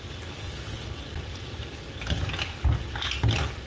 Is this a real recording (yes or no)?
yes